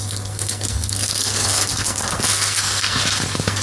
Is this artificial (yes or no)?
yes